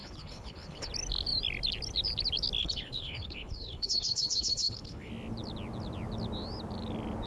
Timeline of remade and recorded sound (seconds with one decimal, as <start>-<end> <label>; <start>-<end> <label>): 0.0-0.9 remade; 0.9-2.6 recorded; 2.6-5.1 remade; 5.1-7.3 recorded